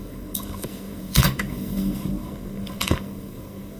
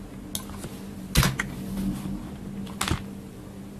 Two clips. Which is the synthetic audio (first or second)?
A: first